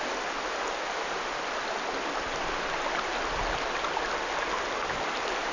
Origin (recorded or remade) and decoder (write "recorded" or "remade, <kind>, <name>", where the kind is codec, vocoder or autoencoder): recorded